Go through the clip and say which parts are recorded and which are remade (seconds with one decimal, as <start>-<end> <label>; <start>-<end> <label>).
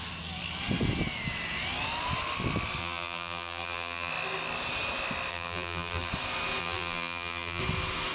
0.0-2.8 recorded; 2.8-4.1 remade; 4.1-5.3 recorded; 5.3-6.1 remade; 6.1-6.6 recorded; 6.6-7.6 remade; 7.6-8.1 recorded